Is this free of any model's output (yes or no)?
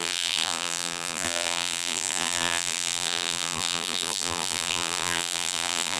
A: no